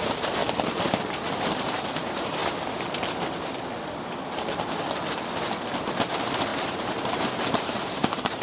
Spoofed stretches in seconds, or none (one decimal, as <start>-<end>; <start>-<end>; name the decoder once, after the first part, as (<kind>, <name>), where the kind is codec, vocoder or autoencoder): 0.0-0.4 (vocoder, BigVGAN v2); 1.2-2.4; 5.7-8.4